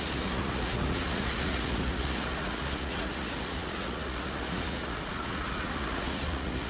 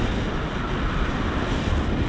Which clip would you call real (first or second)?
second